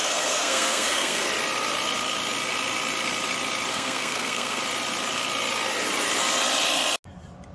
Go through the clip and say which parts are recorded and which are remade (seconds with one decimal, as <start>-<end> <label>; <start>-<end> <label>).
0.0-1.3 remade; 1.3-3.7 recorded; 3.7-4.6 remade; 4.6-7.5 recorded